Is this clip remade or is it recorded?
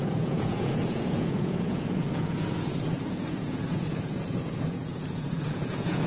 remade